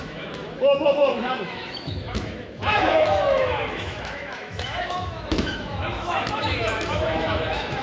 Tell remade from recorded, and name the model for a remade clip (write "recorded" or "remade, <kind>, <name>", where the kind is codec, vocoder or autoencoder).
remade, autoencoder, DAC-VAE